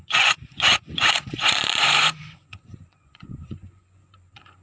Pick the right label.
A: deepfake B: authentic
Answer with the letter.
A